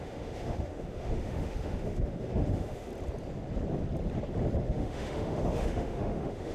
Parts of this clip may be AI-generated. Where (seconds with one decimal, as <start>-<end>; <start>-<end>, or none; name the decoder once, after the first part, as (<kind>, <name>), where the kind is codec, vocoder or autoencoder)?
0.0-2.9 (autoencoder, DAC-VAE); 4.6-6.5